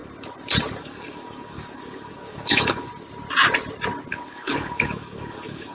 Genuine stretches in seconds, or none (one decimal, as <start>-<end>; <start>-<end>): 0.0-0.8; 2.9-4.1